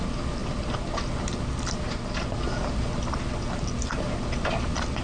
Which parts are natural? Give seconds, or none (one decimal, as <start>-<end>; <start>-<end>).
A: 0.0-5.0